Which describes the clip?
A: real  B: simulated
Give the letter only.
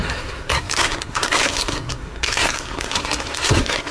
B